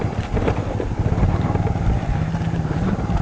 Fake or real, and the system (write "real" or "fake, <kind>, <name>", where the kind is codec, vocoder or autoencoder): real